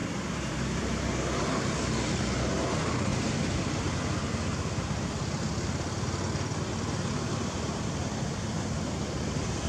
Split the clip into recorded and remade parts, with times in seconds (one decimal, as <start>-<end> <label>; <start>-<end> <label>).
0.0-0.8 remade; 0.8-3.1 recorded; 3.1-4.3 remade; 4.3-9.7 recorded